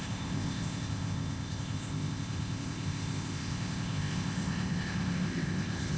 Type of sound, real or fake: fake